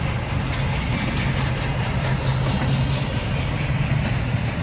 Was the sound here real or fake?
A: real